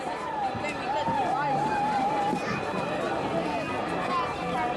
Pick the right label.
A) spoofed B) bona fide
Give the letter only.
B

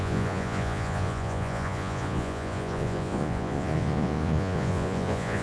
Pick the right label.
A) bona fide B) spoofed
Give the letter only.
B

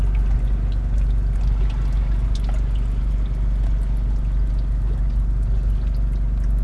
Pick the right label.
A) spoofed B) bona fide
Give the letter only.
B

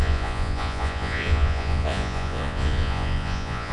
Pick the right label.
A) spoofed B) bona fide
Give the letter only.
A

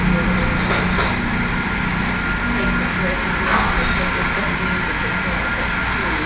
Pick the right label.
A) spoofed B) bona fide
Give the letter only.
B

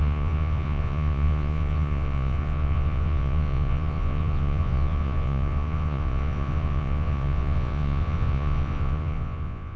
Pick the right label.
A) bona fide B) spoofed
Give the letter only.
B